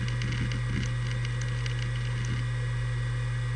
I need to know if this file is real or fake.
real